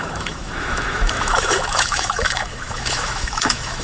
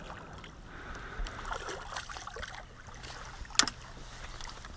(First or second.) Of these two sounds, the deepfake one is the first